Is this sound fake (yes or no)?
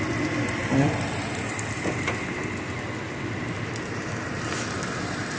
no